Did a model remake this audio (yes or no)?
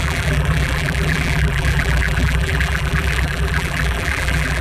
yes